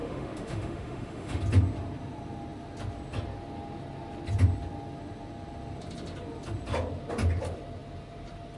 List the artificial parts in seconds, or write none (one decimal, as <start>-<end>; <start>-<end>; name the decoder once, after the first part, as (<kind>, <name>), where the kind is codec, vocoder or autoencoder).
0.0-1.4 (autoencoder, DAC-VAE)